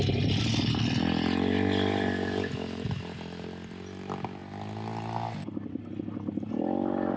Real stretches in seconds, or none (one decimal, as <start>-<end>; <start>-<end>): 0.0-7.2